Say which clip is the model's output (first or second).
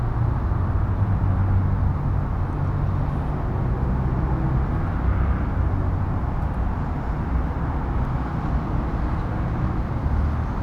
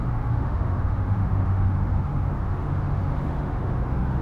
second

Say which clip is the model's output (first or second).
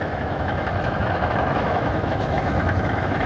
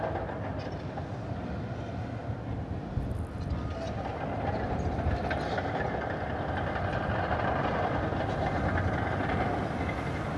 first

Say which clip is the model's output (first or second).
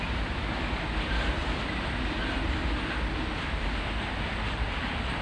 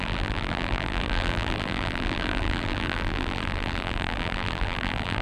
second